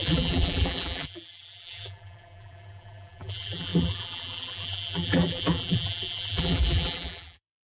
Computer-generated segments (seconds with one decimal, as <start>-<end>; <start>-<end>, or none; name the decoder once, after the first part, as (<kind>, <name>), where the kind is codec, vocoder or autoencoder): 0.0-7.6 (vocoder, BigVGAN v2)